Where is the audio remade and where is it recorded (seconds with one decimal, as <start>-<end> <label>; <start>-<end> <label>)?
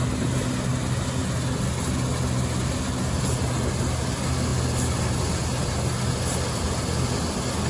0.0-7.7 recorded